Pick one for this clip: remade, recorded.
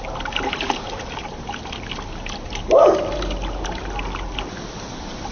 recorded